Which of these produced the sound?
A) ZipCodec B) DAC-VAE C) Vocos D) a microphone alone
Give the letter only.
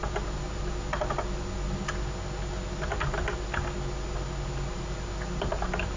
D